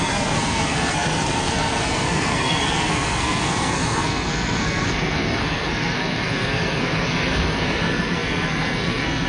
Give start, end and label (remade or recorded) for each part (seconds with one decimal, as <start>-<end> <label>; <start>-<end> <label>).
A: 0.0-9.3 remade